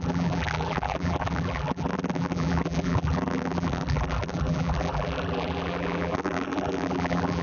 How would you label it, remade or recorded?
remade